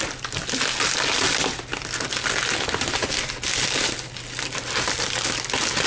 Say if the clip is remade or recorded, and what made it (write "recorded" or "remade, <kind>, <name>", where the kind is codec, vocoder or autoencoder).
recorded